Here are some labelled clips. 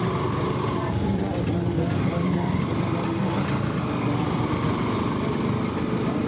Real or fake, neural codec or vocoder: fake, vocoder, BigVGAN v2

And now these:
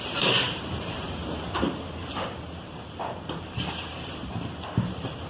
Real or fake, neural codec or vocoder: fake, vocoder, BigVGAN v2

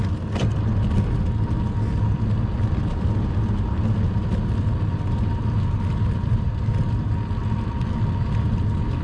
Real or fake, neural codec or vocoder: real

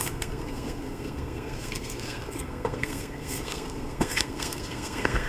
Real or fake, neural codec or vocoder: fake, codec, SNAC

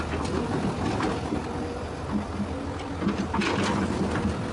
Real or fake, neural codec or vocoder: real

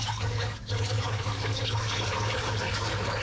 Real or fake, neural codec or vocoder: fake, codec, DAC